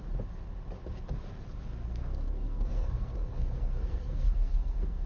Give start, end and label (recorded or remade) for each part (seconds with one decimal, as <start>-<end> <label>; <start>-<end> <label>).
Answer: 0.0-1.8 recorded; 1.8-5.1 remade

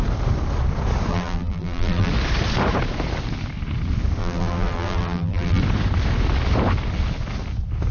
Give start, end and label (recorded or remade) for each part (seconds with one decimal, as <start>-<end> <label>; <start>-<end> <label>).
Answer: 0.0-1.1 recorded; 1.1-2.1 remade; 2.1-4.2 recorded; 4.2-5.6 remade; 5.6-7.9 recorded

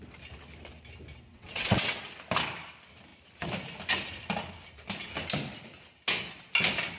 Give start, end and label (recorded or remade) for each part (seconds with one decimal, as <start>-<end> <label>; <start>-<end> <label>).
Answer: 0.0-1.3 recorded; 1.3-2.0 remade; 2.0-7.0 recorded

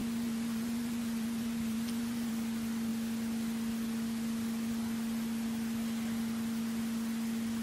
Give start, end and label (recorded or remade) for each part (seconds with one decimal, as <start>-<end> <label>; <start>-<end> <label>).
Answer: 0.0-2.3 remade; 2.3-7.6 recorded

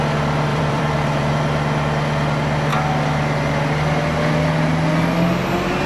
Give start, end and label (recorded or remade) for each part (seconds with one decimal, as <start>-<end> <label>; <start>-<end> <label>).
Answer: 0.0-0.5 recorded; 0.5-1.3 remade; 1.3-5.9 recorded

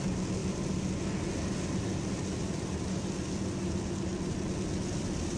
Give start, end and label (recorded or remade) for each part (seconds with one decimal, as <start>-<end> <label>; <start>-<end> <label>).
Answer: 0.0-5.4 recorded

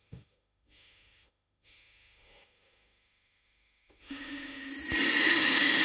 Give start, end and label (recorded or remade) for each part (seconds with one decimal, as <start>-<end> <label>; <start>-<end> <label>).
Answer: 0.0-4.7 remade; 4.7-5.2 recorded; 5.2-5.8 remade

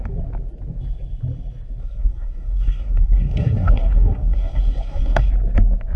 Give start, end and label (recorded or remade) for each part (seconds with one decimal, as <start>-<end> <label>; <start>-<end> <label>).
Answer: 0.0-1.8 recorded; 1.8-5.3 remade; 5.3-6.0 recorded